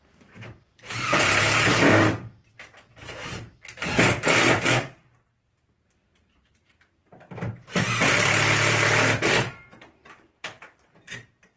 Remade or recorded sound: remade